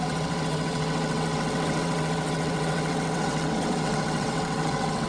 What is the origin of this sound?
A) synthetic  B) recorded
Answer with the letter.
A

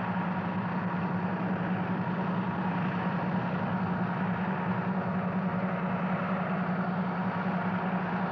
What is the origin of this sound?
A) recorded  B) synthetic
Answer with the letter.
A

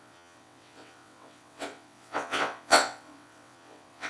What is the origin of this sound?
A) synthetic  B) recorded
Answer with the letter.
A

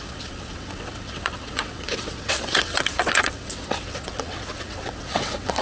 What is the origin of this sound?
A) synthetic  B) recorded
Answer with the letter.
A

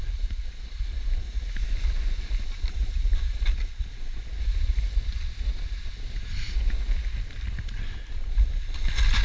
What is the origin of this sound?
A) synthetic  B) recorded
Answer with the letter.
B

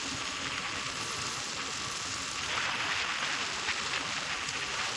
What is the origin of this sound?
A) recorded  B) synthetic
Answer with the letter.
A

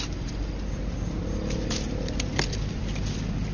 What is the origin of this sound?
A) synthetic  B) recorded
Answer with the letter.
B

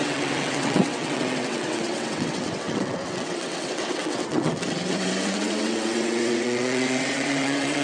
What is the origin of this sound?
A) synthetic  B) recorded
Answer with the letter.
A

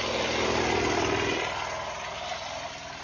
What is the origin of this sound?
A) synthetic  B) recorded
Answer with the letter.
B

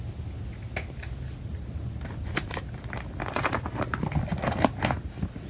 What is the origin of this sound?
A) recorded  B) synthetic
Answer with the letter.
A